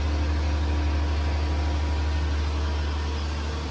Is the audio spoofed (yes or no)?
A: no